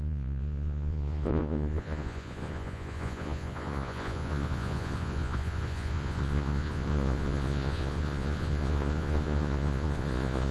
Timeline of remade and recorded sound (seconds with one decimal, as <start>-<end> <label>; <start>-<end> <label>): 0.0-10.5 remade

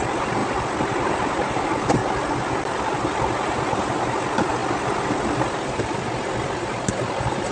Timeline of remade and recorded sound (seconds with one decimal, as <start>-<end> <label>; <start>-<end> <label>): 0.0-7.5 recorded

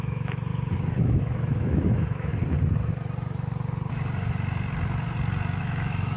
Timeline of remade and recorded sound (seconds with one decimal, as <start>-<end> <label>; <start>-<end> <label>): 0.0-0.5 remade; 0.5-1.0 recorded; 1.0-2.3 remade; 2.3-5.6 recorded; 5.6-6.2 remade

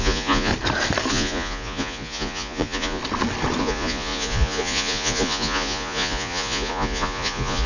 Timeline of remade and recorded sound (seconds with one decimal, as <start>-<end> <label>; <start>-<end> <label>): 0.0-0.5 remade; 0.5-1.1 recorded; 1.1-3.0 remade; 3.0-3.6 recorded; 3.6-7.7 remade

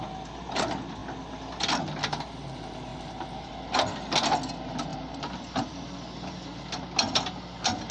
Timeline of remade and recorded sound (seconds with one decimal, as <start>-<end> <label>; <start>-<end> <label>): 0.0-2.9 recorded; 2.9-3.5 remade; 3.5-4.9 recorded; 4.9-5.7 remade; 5.7-7.9 recorded

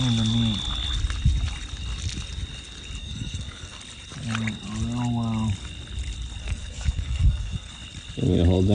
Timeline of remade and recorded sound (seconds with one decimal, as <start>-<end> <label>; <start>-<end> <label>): 0.0-3.0 recorded; 3.0-3.8 remade; 3.8-6.4 recorded; 6.4-7.7 remade; 7.7-8.7 recorded